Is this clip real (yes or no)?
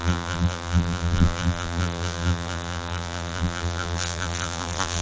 no